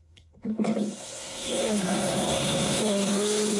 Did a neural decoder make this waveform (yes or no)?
yes